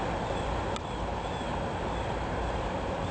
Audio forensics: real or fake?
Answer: fake